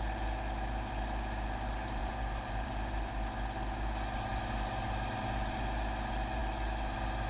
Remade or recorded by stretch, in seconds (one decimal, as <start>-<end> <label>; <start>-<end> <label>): 0.0-2.0 recorded; 2.0-2.7 remade; 2.7-7.3 recorded